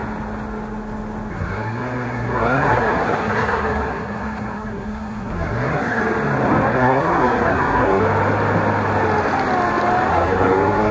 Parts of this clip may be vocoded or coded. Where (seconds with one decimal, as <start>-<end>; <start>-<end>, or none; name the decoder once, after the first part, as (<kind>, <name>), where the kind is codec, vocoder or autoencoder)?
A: 1.3-6.0 (codec, SNAC); 6.7-8.0; 10.1-10.9